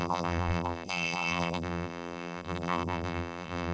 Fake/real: fake